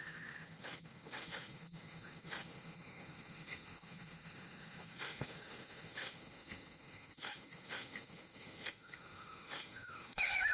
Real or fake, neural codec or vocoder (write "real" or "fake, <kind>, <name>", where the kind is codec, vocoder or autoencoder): fake, autoencoder, DAC-VAE